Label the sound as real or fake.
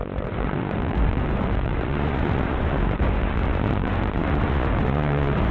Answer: fake